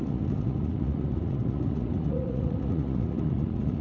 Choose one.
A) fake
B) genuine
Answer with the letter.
A